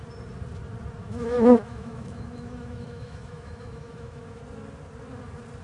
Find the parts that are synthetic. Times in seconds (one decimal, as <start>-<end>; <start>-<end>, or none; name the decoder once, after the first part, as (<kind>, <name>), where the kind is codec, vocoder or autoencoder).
1.0-4.4 (autoencoder, DAC-VAE)